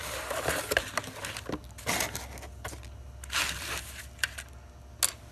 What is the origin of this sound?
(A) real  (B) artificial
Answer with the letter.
A